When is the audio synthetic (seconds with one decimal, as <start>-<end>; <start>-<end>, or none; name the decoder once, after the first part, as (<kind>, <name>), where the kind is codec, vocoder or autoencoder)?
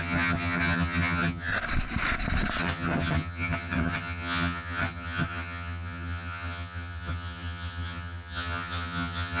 0.0-1.5 (vocoder, HiFi-GAN); 2.6-9.4